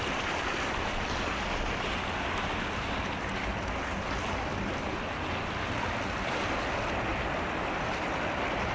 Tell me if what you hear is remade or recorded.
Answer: recorded